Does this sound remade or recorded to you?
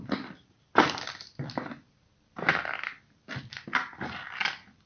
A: recorded